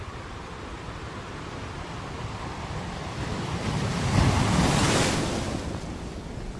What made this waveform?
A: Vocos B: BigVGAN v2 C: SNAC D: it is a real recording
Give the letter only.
B